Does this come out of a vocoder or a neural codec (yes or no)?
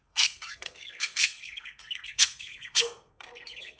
yes